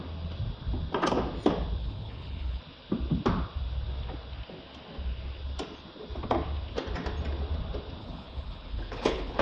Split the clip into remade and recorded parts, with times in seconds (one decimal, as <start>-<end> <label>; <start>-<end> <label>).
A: 0.0-1.8 recorded; 1.8-2.6 remade; 2.6-8.0 recorded; 8.0-9.4 remade